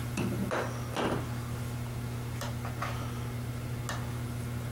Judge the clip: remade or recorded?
recorded